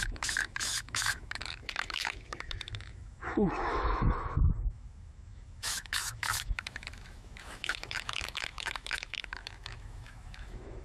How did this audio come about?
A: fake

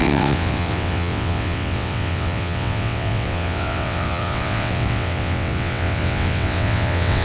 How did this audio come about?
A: fake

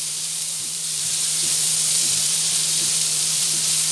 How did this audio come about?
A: fake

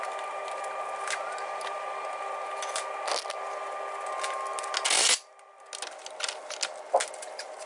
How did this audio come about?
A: real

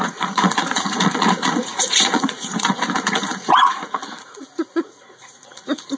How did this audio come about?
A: fake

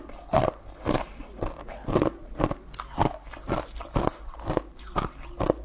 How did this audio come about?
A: real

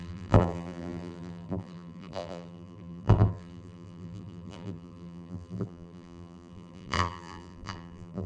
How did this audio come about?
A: fake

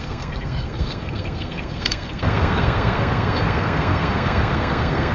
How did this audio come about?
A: fake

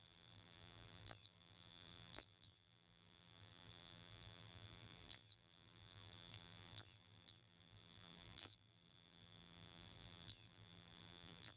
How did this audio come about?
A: fake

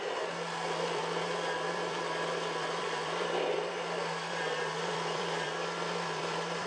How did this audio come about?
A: fake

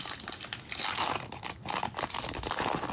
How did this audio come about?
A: real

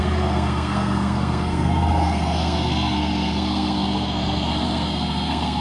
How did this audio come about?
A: fake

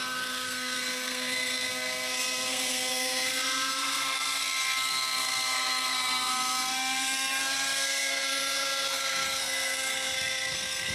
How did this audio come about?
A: fake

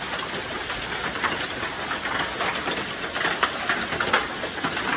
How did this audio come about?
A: real